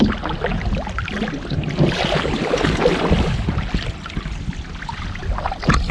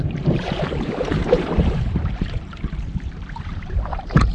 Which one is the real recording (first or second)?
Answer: first